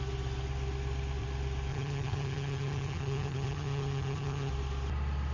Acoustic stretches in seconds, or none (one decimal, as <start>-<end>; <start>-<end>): 0.0-1.7; 4.5-5.3